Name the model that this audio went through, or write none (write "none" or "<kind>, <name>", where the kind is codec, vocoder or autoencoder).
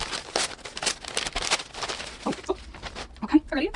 none